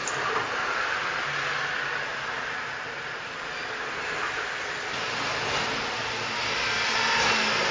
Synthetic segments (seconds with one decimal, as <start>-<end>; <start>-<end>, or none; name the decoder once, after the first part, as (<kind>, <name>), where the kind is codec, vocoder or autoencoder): none